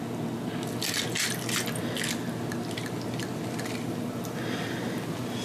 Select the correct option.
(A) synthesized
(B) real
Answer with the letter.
B